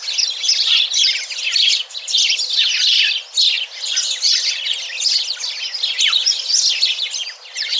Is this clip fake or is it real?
real